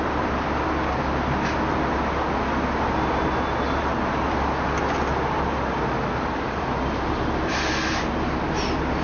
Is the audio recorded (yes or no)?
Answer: yes